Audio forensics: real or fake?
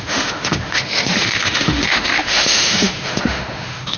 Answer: fake